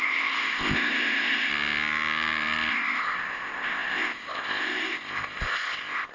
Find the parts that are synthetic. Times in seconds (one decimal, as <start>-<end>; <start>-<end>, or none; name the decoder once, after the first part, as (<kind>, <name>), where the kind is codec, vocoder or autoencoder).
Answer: 0.0-1.5 (codec, ZipCodec); 2.7-6.1